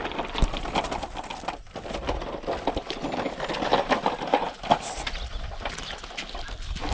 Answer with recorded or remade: recorded